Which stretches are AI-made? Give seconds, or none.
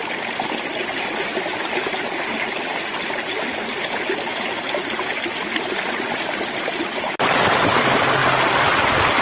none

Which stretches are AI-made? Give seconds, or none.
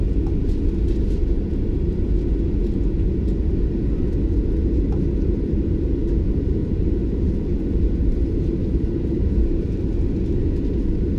6.6-10.0 (vocoder, BigVGAN v2)